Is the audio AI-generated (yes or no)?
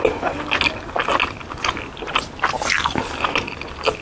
no